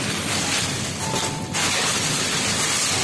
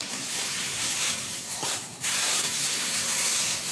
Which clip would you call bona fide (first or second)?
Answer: first